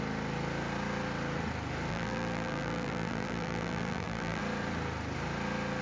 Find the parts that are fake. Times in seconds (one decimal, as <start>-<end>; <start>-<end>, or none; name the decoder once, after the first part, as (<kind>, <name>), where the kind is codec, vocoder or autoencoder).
1.9-4.4 (vocoder, BigVGAN v2)